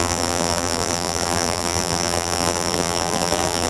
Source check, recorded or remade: remade